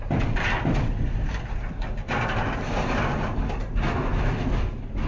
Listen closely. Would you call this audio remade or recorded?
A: recorded